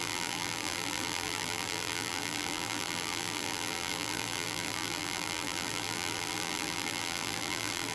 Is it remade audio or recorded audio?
remade